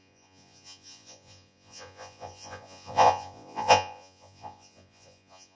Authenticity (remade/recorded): remade